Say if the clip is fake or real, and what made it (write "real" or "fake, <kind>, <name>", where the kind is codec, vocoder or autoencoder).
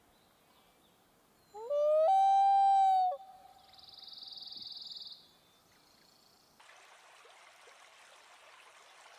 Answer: real